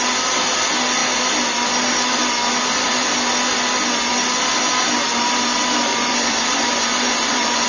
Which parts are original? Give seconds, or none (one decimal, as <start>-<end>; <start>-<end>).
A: 0.0-5.9